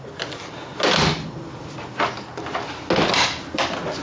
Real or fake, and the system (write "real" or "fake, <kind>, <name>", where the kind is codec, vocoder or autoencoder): real